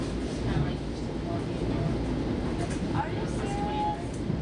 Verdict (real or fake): real